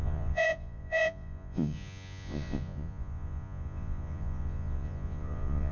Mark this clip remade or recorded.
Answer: remade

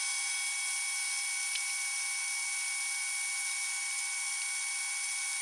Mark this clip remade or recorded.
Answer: recorded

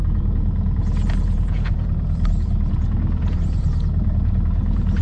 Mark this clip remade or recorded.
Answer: remade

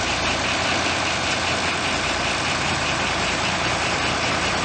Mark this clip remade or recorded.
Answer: recorded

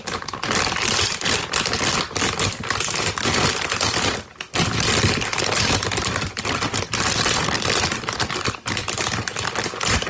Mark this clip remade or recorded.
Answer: recorded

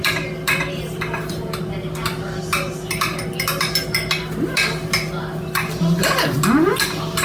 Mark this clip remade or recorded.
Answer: recorded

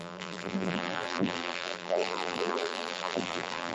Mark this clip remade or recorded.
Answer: remade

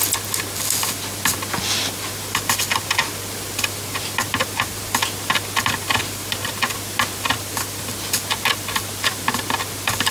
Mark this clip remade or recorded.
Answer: recorded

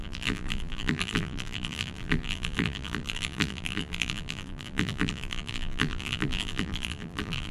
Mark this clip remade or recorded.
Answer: remade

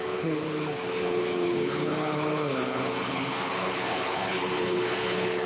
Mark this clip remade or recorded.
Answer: remade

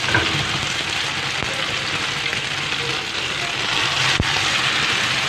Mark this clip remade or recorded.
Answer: recorded